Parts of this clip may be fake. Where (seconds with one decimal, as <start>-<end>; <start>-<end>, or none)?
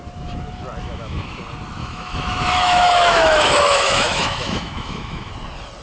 0.8-1.4; 1.8-5.3